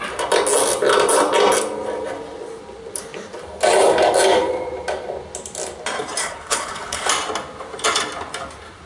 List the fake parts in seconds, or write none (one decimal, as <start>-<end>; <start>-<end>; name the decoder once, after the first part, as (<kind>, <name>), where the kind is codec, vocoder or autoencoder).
6.2-7.1 (codec, HILCodec)